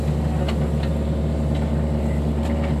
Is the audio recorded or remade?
recorded